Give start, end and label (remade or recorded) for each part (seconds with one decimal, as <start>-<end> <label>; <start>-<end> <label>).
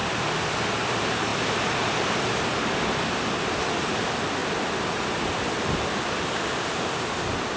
0.0-4.4 remade; 4.4-5.1 recorded; 5.1-7.6 remade